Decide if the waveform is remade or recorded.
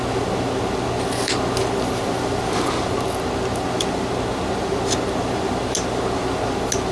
recorded